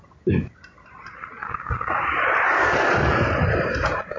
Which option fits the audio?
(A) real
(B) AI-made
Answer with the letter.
A